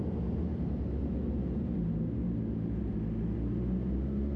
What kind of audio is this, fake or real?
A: real